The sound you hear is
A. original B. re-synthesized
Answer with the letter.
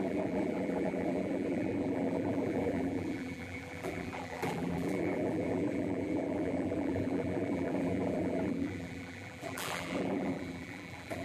B